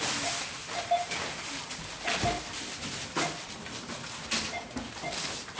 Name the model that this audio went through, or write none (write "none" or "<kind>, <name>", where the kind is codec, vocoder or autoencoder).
none